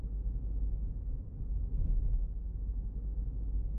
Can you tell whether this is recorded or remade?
recorded